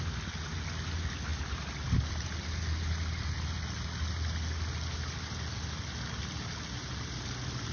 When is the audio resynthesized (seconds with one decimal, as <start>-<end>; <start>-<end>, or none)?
none